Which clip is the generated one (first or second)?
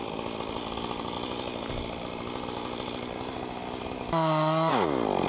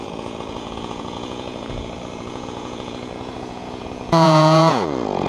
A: second